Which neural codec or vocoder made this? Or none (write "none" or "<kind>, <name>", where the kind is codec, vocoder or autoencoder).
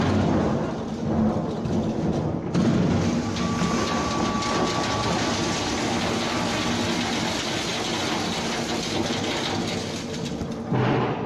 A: none